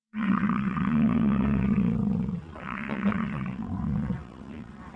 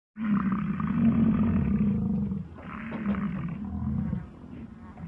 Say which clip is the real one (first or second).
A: second